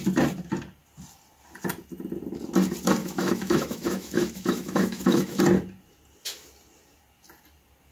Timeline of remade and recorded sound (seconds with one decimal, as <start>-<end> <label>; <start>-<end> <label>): 0.0-3.0 recorded; 3.0-5.4 remade; 5.4-7.9 recorded